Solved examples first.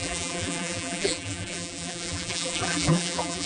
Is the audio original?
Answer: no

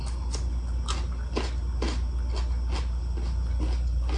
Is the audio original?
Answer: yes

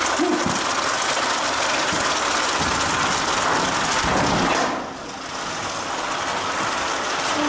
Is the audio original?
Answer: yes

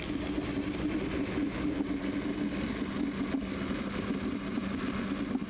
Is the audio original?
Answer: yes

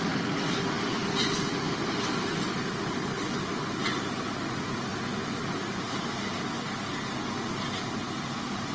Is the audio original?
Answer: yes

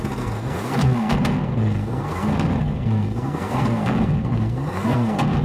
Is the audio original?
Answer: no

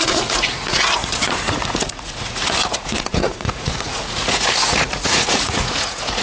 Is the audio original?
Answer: no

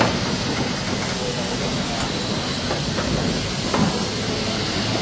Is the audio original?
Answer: yes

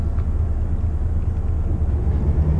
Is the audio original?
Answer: yes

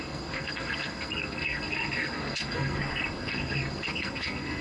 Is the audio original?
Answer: no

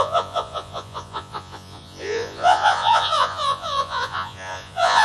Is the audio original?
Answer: no